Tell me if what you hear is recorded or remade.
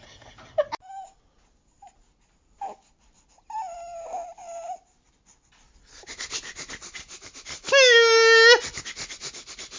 recorded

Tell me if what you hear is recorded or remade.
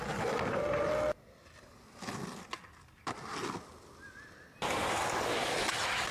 recorded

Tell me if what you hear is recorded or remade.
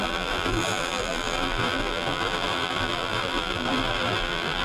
remade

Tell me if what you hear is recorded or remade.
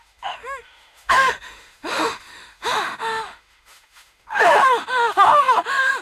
remade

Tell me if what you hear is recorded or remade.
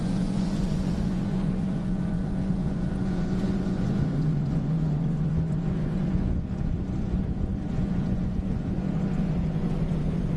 remade